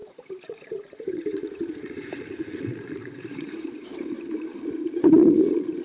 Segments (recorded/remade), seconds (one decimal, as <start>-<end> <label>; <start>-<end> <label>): 0.0-3.9 remade; 3.9-4.8 recorded; 4.8-5.8 remade